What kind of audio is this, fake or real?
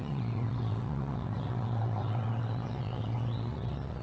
fake